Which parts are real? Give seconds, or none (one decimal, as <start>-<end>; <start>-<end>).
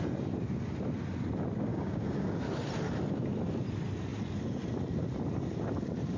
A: 0.0-1.7; 2.3-6.2